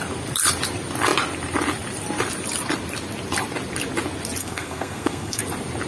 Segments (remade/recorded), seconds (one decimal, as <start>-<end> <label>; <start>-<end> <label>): 0.0-4.4 recorded; 4.4-5.4 remade; 5.4-5.9 recorded